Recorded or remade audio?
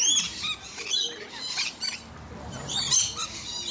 recorded